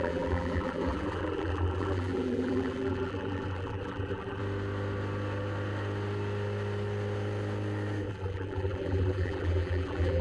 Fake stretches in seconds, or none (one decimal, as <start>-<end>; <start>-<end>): 0.0-4.4; 8.1-10.2